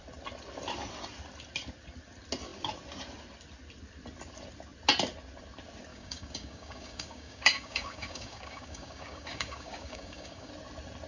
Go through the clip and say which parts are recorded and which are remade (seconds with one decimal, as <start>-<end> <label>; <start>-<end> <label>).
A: 0.0-5.9 recorded; 5.9-10.5 remade; 10.5-11.1 recorded